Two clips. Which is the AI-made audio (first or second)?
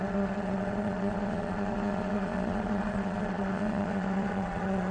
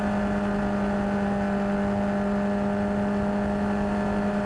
first